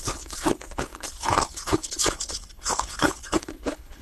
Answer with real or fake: fake